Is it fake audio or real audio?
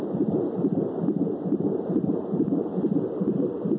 fake